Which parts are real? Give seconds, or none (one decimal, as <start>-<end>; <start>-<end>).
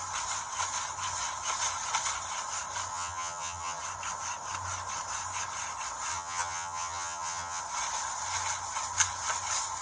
0.0-2.9; 3.8-6.1; 7.6-9.8